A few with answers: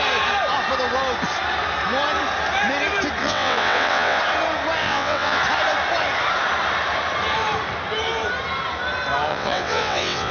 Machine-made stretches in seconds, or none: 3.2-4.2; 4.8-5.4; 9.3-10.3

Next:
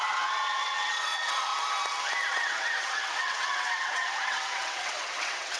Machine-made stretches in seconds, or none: 0.0-1.5; 2.3-5.6

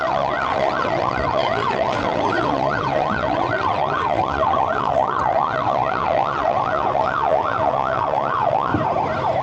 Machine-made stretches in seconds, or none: 0.0-8.7

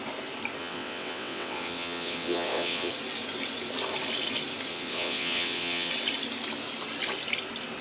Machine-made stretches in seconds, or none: 0.6-2.9; 4.7-5.9

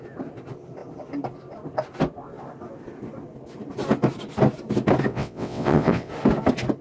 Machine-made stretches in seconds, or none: 5.1-6.1

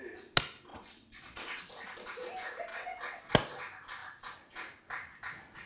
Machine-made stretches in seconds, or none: 0.7-1.6; 2.7-3.3